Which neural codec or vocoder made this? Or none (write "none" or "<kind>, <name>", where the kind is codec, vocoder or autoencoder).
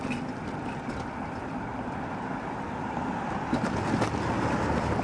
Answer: none